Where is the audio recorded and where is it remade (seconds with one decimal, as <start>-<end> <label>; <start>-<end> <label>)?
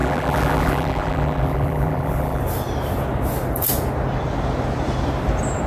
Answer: 0.0-2.4 remade; 2.4-5.7 recorded